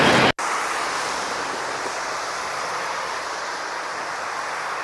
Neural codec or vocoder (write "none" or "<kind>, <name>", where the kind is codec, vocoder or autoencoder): none